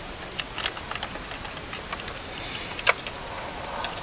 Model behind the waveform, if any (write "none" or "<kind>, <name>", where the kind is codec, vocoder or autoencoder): none